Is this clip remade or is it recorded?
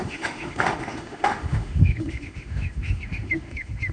remade